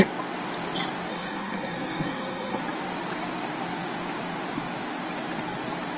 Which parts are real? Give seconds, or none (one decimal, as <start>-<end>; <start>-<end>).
0.0-1.1; 2.6-6.0